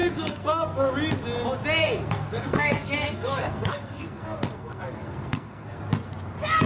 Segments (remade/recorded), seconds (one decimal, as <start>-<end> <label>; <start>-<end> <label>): 0.0-0.9 remade; 0.9-1.8 recorded; 1.8-5.8 remade; 5.8-6.7 recorded